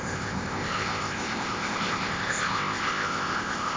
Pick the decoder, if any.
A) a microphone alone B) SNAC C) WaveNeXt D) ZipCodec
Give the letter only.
D